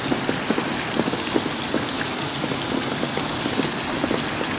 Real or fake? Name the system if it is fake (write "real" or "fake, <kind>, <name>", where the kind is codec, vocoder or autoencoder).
real